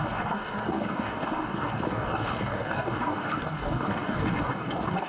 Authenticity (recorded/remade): remade